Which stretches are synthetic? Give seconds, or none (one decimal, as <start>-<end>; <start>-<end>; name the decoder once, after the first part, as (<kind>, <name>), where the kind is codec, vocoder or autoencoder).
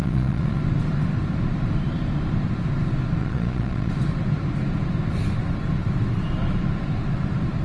0.0-0.6 (vocoder, Vocos); 3.2-3.9